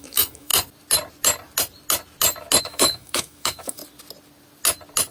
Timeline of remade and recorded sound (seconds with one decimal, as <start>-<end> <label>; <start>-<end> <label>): 0.0-0.5 remade; 0.5-2.6 recorded; 2.6-3.8 remade; 3.8-5.1 recorded